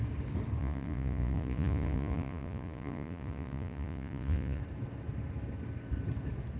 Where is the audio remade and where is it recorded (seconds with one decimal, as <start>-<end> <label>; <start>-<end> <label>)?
0.0-0.6 recorded; 0.6-4.6 remade; 4.6-6.6 recorded